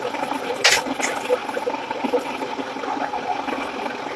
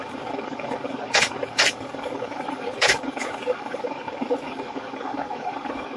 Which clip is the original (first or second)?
first